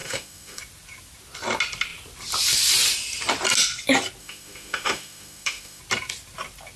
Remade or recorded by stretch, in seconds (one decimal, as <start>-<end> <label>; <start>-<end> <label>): 0.0-0.6 remade; 0.6-4.2 recorded; 4.2-5.8 remade; 5.8-6.8 recorded